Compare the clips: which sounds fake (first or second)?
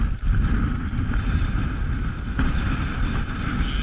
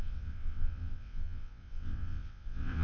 second